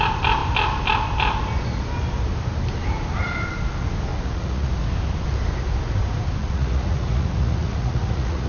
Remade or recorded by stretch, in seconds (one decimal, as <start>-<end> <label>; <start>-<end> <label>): 0.0-4.1 recorded; 4.1-4.7 remade; 4.7-6.4 recorded; 6.4-8.5 remade